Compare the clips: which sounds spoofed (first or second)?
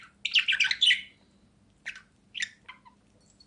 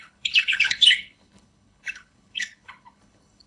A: second